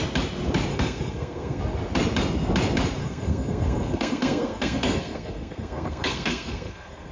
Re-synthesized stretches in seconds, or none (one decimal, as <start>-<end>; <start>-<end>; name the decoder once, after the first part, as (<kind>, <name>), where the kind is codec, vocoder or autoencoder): 0.7-1.6 (codec, SNAC); 3.0-7.1